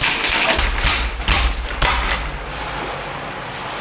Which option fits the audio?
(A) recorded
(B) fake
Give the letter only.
A